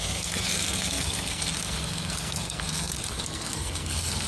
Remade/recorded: remade